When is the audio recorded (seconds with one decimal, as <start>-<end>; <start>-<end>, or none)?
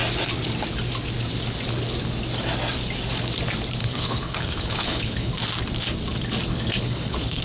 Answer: 0.0-3.8; 5.3-6.5